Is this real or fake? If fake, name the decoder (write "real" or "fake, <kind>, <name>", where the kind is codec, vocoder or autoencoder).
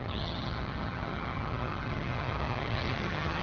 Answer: fake, vocoder, HiFi-GAN